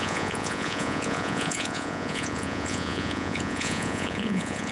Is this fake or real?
fake